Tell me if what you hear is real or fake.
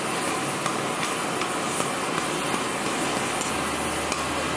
real